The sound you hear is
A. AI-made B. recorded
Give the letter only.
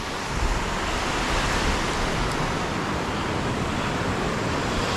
B